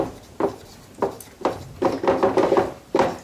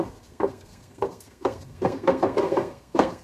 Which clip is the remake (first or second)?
second